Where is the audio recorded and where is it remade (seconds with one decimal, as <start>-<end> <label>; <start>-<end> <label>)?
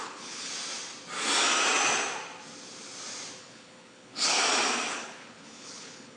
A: 0.0-0.5 remade; 0.5-3.4 recorded; 3.4-4.4 remade; 4.4-4.9 recorded; 4.9-6.2 remade